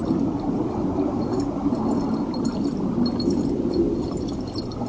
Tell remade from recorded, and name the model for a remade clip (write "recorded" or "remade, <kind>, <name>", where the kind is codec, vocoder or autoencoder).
recorded